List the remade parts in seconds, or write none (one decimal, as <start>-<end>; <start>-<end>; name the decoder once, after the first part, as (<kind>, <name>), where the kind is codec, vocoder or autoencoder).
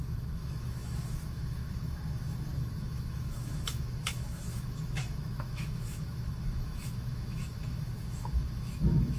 0.0-9.2 (autoencoder, DAC-VAE)